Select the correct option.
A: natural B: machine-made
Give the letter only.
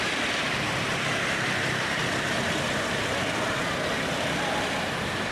A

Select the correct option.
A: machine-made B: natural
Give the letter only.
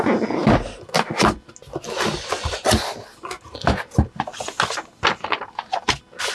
B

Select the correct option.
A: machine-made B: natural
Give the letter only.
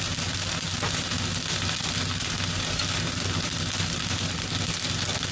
B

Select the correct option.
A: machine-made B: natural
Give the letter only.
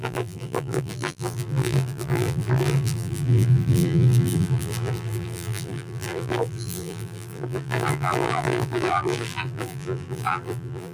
A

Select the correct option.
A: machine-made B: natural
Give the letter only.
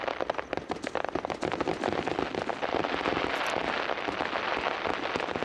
B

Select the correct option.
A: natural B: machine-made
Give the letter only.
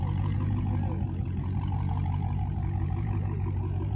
B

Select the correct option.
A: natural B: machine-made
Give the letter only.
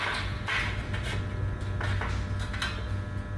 A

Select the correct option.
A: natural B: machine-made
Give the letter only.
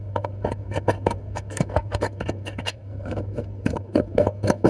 B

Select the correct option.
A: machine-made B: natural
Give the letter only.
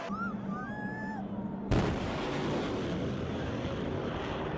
B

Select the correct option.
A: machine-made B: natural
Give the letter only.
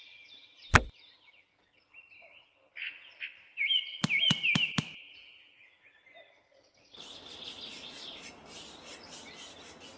B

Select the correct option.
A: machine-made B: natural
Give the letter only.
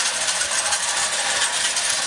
B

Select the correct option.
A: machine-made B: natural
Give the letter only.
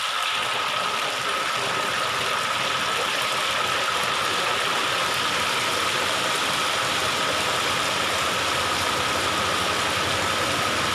B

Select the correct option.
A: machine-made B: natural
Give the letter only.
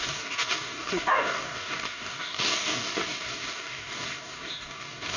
A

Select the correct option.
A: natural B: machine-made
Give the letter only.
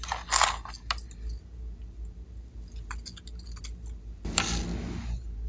A